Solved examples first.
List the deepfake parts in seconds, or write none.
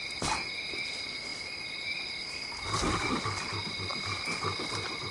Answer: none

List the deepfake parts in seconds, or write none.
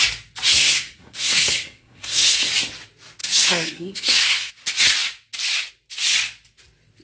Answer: 0.5-2.5; 3.2-4.5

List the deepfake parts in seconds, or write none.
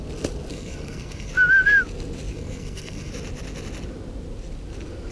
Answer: 0.5-1.3; 2.3-3.1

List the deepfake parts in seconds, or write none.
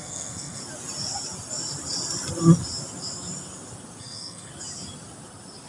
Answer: 0.0-0.6; 4.0-4.5